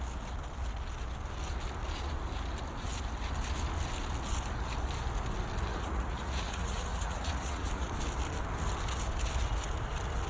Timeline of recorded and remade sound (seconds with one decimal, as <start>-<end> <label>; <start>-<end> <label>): 0.0-5.7 recorded; 5.7-7.9 remade; 7.9-10.3 recorded